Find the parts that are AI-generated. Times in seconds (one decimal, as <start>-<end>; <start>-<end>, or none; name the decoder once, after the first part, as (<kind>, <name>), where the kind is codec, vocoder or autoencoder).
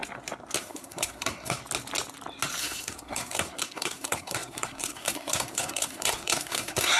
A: 0.6-1.6 (codec, SNAC); 2.6-7.0